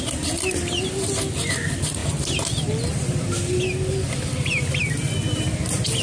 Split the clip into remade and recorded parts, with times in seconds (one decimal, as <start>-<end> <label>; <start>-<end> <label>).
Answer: 0.0-6.0 remade